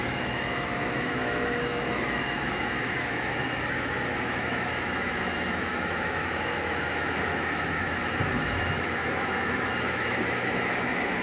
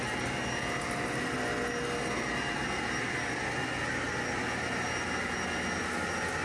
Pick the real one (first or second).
second